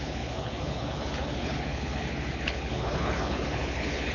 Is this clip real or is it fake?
fake